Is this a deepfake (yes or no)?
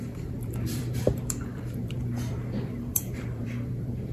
yes